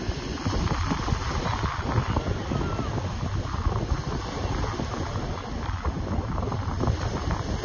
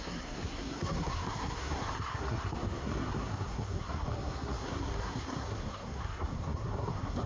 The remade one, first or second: second